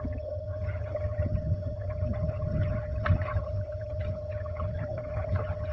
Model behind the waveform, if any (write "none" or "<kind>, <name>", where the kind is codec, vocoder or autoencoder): vocoder, HiFi-GAN